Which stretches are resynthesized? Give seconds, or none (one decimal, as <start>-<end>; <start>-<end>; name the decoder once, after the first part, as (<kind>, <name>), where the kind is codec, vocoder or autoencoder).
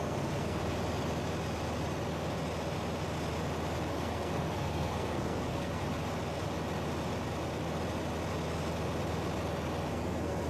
0.0-0.6 (codec, SNAC); 3.9-5.8; 9.9-10.5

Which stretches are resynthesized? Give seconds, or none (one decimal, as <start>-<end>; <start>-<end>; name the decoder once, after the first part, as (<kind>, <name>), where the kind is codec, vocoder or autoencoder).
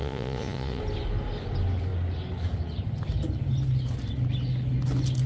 0.0-0.8 (vocoder, Vocos)